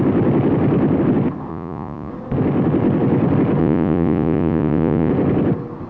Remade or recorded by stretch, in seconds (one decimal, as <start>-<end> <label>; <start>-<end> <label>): 0.0-1.5 recorded; 1.5-2.1 remade; 2.1-3.6 recorded; 3.6-5.1 remade; 5.1-5.9 recorded